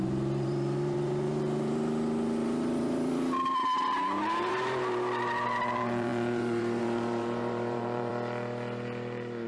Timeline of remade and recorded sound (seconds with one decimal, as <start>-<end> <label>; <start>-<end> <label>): 0.0-8.1 remade; 8.1-9.5 recorded